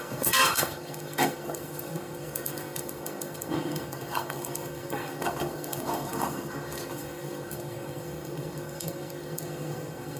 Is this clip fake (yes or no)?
yes